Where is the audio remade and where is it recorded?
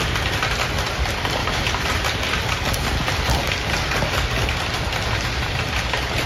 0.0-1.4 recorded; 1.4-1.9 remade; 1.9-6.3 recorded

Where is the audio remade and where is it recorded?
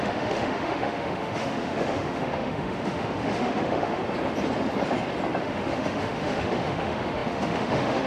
0.0-4.0 remade; 4.0-5.4 recorded; 5.4-8.1 remade